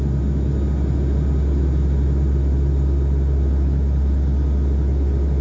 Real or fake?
real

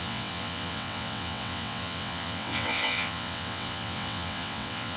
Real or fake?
fake